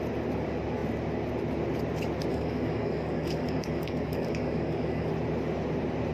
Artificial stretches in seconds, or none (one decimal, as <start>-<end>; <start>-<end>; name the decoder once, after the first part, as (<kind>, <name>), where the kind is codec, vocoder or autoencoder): 2.3-5.1 (codec, DAC)